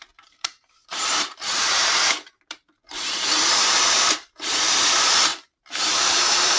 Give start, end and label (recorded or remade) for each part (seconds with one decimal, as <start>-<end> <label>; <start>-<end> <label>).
0.0-6.6 remade